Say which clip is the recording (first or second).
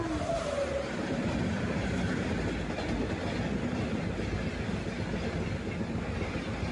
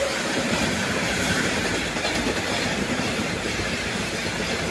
first